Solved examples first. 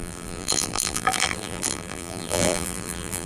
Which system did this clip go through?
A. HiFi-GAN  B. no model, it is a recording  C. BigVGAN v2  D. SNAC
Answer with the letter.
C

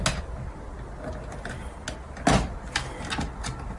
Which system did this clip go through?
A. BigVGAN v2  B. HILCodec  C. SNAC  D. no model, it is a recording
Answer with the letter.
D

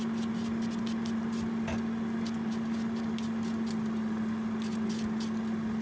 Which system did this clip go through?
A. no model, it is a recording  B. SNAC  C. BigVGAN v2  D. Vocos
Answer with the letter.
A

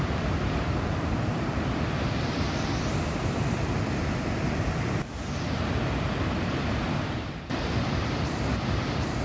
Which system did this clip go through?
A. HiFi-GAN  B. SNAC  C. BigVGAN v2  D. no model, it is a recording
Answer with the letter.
C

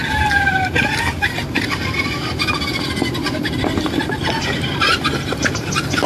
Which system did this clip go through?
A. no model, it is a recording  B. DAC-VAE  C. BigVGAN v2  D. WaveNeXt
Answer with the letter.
C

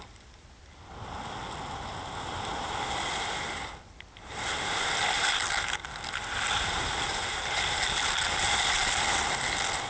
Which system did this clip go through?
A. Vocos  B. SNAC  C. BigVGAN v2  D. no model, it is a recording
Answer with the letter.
D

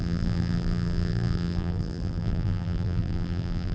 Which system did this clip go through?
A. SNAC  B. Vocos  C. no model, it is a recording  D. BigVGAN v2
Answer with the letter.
D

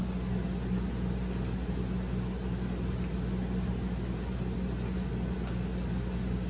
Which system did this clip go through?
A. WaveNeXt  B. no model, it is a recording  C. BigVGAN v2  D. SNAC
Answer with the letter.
B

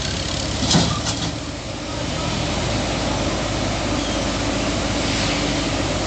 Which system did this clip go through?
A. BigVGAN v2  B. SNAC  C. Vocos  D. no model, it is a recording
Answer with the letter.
D